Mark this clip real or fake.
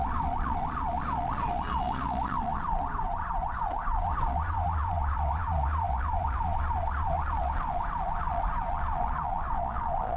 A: fake